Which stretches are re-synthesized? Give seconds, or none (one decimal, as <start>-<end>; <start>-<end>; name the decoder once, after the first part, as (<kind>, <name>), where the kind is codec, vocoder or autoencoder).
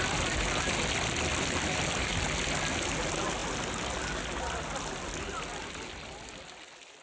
none